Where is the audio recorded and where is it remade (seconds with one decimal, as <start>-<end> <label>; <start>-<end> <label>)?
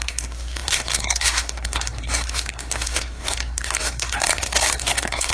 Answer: 0.0-5.3 remade